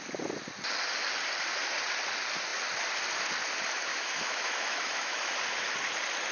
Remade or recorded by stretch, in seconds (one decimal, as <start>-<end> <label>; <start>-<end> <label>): 0.0-3.9 recorded; 3.9-5.3 remade; 5.3-6.3 recorded